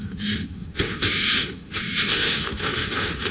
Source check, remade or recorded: remade